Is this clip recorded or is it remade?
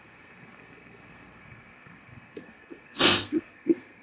remade